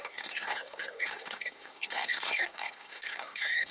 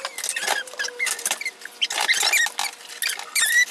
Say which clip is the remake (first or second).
first